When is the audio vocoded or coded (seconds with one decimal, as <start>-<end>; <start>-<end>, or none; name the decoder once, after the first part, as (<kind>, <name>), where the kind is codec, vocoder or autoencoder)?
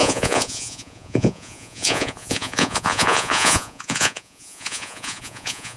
0.0-5.8 (vocoder, Vocos)